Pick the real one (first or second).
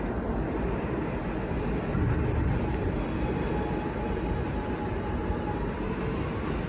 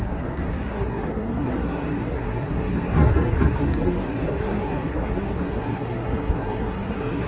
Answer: first